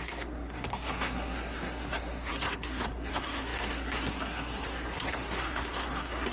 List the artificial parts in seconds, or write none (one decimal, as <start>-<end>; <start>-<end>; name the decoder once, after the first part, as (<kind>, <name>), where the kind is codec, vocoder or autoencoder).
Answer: 0.0-6.3 (codec, SNAC)